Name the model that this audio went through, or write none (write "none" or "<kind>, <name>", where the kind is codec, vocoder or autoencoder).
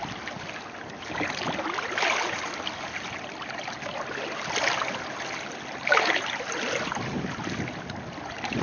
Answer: none